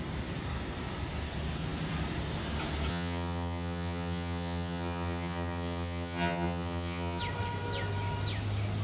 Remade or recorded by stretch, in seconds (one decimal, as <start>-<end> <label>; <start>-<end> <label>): 0.0-2.9 recorded; 2.9-7.2 remade; 7.2-8.8 recorded